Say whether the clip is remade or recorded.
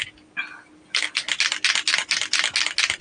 recorded